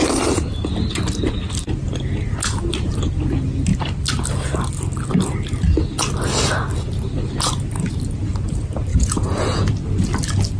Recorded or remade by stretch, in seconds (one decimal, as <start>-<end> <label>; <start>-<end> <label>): 0.0-8.9 recorded; 8.9-9.7 remade; 9.7-10.6 recorded